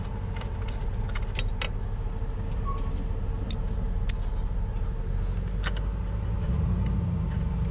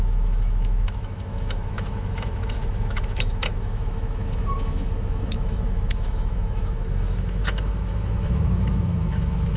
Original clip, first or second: first